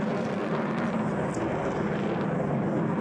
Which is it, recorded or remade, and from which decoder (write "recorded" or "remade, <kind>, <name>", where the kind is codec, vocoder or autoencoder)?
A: recorded